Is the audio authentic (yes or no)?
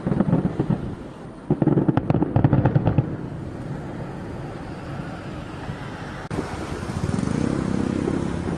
yes